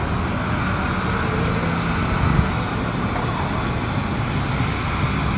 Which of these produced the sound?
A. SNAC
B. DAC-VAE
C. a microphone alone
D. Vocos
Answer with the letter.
C